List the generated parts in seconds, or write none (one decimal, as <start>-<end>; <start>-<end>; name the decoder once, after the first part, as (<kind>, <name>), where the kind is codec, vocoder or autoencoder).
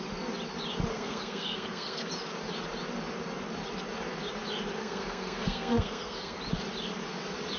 0.9-2.1 (codec, SNAC); 4.8-6.4